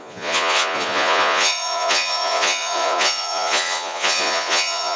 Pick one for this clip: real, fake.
fake